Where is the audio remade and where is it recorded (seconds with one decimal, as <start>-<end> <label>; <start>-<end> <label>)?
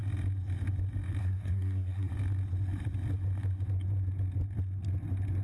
0.0-1.2 recorded; 1.2-2.1 remade; 2.1-5.4 recorded